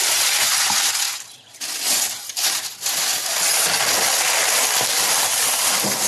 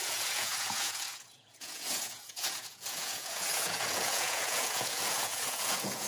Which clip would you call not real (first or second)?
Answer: second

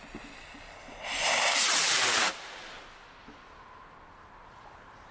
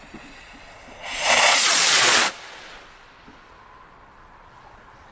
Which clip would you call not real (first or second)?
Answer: second